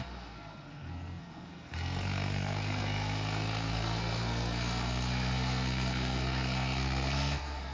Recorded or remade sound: remade